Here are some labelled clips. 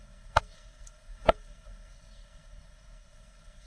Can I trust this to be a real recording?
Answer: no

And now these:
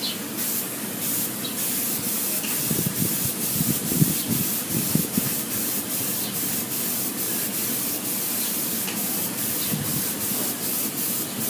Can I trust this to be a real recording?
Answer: yes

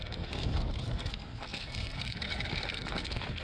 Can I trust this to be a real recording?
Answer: no